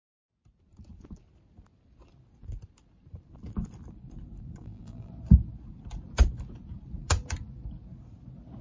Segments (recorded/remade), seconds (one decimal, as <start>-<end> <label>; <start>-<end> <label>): 0.0-4.6 recorded; 4.6-5.1 remade; 5.1-8.6 recorded